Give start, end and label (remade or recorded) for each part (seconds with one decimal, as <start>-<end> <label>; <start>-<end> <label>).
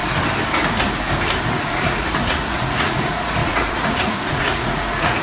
0.0-1.6 recorded; 1.6-5.2 remade